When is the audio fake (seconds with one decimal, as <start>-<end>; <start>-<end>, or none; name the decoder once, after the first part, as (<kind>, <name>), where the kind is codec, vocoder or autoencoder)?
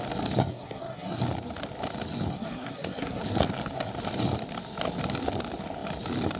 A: 0.4-1.2 (codec, SNAC); 2.3-3.2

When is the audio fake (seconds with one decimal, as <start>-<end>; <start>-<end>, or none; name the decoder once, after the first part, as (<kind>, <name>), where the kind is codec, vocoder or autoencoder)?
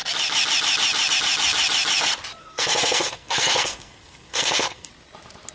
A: 2.4-4.9 (codec, SNAC)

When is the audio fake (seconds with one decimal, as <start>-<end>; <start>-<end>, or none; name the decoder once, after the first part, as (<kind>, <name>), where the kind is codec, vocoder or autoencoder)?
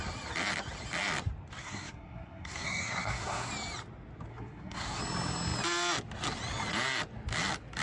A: 1.6-3.5 (codec, SNAC); 4.3-5.0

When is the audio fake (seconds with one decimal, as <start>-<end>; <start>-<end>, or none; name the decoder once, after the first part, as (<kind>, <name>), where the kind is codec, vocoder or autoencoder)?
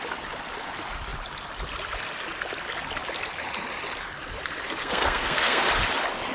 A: 4.8-5.6 (codec, SNAC)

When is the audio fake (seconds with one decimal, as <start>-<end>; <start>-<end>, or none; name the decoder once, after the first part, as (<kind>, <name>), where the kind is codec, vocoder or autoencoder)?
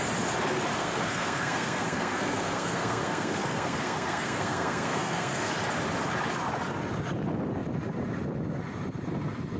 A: 0.8-5.5 (codec, SNAC)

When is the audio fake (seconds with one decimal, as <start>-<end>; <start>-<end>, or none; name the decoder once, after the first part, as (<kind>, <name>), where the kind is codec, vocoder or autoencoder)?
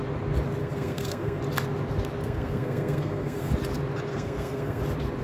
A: 0.6-1.4 (codec, SNAC); 2.2-3.5; 4.1-4.8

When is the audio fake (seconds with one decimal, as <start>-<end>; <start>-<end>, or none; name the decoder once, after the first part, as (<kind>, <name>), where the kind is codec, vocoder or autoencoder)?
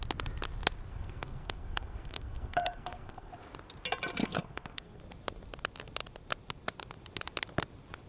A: 0.9-3.3 (codec, SNAC); 4.2-5.0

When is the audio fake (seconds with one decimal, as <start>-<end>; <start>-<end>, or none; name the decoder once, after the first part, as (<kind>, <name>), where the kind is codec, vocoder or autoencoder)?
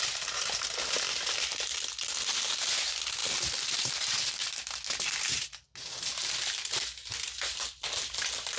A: none